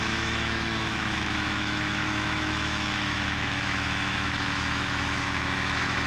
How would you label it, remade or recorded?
remade